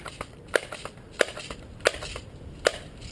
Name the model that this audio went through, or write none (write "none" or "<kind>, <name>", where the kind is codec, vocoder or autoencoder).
none